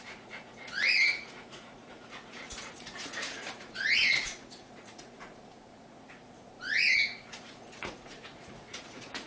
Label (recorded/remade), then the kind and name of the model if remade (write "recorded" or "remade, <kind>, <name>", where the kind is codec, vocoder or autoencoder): remade, vocoder, Vocos